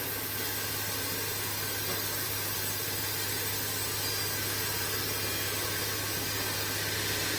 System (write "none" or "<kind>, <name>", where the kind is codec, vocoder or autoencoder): none